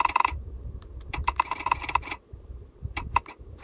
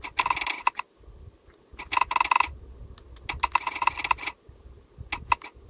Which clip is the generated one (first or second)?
first